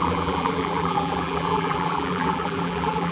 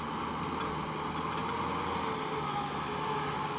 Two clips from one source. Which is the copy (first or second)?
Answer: first